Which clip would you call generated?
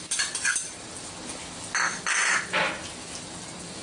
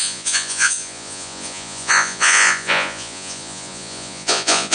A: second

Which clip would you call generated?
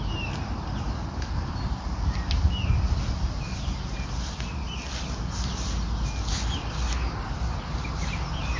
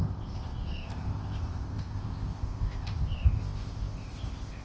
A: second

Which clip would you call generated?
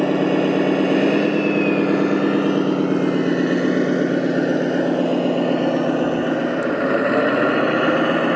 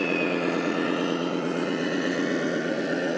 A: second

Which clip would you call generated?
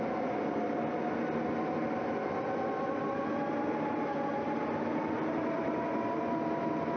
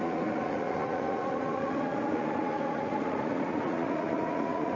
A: second